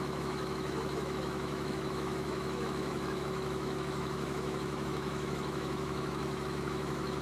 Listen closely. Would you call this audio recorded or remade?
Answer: remade